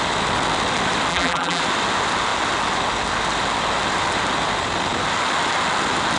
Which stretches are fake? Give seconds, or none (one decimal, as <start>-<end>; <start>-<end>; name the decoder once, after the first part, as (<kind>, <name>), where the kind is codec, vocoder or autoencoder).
1.1-1.6 (vocoder, BigVGAN v2)